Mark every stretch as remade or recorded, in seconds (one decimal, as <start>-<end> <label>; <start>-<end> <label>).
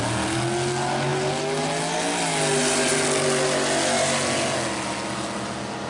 0.0-5.9 recorded